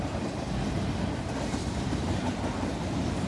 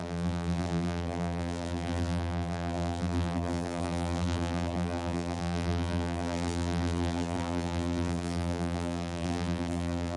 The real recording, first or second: first